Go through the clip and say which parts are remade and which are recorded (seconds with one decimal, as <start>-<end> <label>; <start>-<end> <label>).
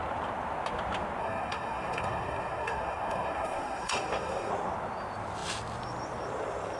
0.0-1.2 recorded; 1.2-4.5 remade; 4.5-6.8 recorded